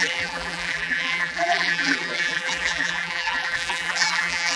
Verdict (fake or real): fake